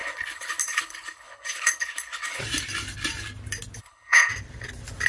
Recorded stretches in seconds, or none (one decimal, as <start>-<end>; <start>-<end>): 2.4-3.8; 4.3-5.1

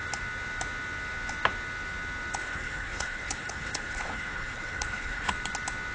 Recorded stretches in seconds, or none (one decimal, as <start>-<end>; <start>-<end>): 0.0-2.4; 5.3-5.9

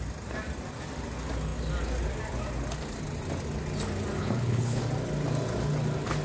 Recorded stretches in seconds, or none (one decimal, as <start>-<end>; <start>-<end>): 0.0-4.2; 4.8-6.2

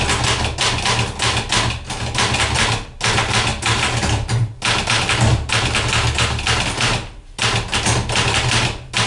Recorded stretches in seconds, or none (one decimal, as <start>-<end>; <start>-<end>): 0.0-9.1

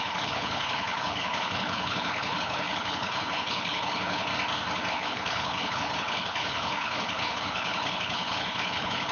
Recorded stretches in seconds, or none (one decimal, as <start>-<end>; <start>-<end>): 4.3-4.9

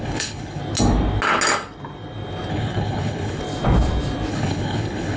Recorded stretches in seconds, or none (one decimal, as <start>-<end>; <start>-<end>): 0.6-2.5; 3.4-4.3

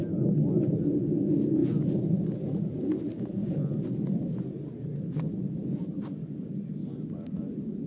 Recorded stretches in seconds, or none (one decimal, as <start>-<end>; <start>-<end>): 0.0-7.9